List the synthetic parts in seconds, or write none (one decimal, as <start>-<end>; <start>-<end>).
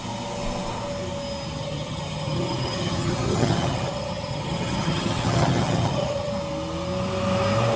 1.6-6.3